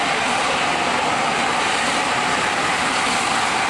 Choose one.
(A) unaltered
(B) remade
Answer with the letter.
A